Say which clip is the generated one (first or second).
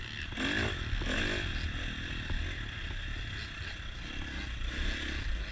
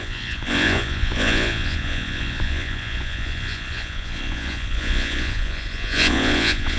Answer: second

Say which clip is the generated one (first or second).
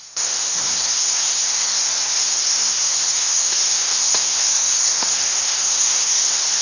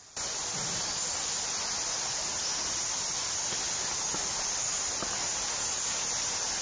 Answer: first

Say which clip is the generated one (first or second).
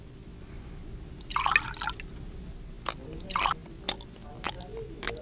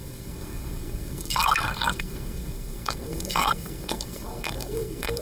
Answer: second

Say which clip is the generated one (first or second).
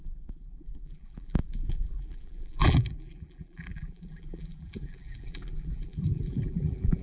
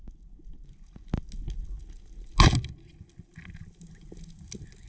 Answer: first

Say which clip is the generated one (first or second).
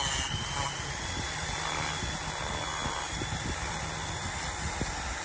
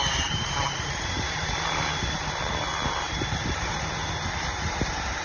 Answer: second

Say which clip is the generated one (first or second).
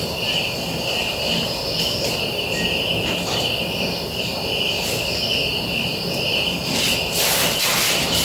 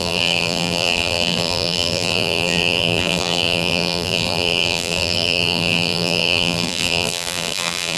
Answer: second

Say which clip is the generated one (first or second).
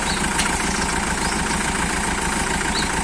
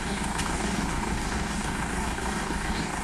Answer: second